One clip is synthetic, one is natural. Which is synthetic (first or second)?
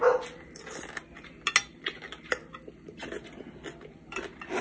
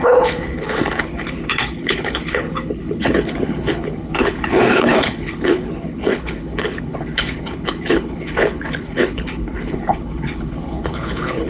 second